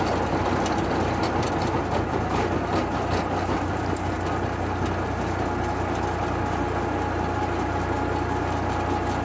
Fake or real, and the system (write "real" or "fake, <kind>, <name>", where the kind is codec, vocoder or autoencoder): real